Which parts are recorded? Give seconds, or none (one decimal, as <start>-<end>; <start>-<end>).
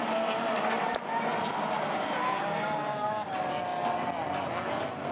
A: 0.0-5.1